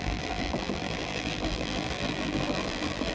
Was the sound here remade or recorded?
remade